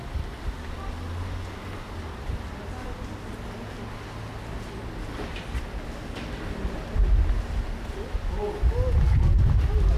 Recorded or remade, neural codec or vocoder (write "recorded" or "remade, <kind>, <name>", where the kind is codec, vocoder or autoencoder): recorded